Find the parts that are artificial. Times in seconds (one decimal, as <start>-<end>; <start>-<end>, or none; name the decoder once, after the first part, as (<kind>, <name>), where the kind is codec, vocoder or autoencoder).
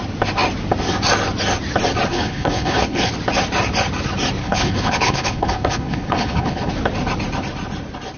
2.1-3.1 (codec, HILCodec); 4.4-6.7